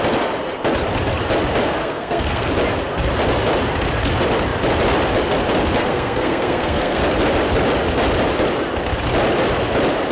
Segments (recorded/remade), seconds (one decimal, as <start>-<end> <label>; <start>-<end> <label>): 0.0-1.8 recorded; 1.8-2.5 remade; 2.5-5.8 recorded; 5.8-7.0 remade; 7.0-10.1 recorded